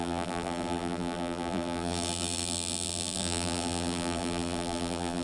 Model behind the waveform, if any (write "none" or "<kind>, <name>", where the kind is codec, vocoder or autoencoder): vocoder, BigVGAN v2